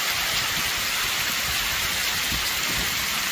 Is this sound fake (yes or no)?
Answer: yes